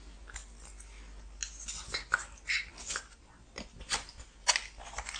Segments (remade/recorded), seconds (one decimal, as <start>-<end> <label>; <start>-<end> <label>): 0.0-5.2 recorded